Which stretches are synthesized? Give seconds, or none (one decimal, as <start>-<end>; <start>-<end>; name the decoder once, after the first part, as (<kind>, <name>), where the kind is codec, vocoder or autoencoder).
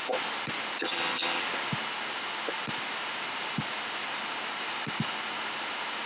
0.8-1.4 (vocoder, HiFi-GAN)